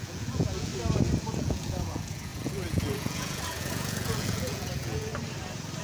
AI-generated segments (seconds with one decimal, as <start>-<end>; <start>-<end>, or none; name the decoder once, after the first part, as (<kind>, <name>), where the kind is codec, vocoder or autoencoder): 0.0-0.7 (vocoder, Vocos); 1.3-5.1